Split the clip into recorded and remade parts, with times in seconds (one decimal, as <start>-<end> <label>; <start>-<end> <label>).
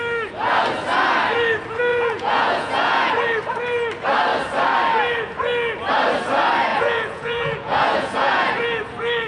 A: 0.0-1.9 recorded; 1.9-3.1 remade; 3.1-6.7 recorded; 6.7-8.5 remade; 8.5-9.3 recorded